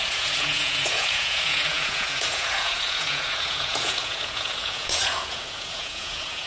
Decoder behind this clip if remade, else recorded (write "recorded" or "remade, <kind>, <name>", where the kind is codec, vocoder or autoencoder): remade, vocoder, Vocos